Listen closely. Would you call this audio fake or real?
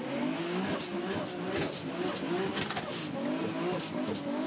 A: real